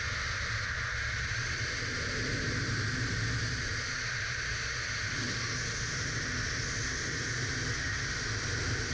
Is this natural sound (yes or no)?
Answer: yes